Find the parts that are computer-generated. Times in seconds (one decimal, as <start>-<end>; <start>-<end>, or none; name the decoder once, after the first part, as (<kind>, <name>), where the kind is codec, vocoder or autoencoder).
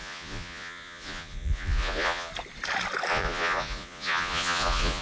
0.0-2.3 (vocoder, Vocos); 3.1-5.0